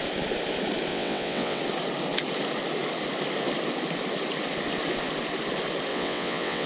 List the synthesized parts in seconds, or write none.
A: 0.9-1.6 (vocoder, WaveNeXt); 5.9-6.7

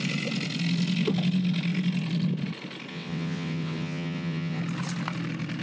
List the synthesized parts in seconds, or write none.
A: 2.9-4.6 (vocoder, WaveNeXt)

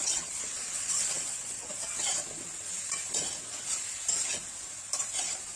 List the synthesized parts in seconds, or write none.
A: 0.0-2.1 (vocoder, WaveNeXt)

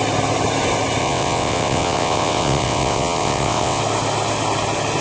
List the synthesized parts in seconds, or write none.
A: 1.0-3.8 (vocoder, WaveNeXt)

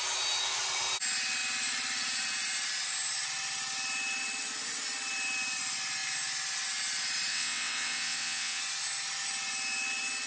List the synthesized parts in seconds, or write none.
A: 7.3-8.6 (vocoder, WaveNeXt)

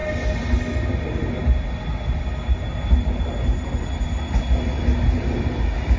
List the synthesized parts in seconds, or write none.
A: none

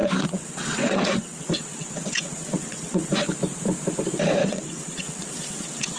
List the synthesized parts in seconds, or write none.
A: 0.0-3.1 (vocoder, WaveNeXt); 4.4-6.0

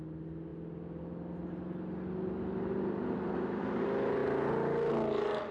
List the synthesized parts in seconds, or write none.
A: none